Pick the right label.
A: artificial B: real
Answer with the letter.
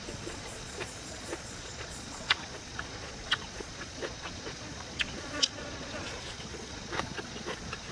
A